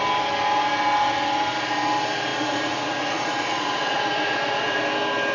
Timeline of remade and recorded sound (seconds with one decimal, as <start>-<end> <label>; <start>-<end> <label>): 0.0-2.3 recorded; 2.3-4.8 remade; 4.8-5.3 recorded